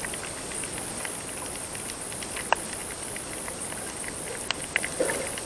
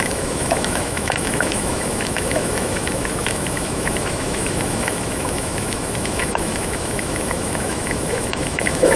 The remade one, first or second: second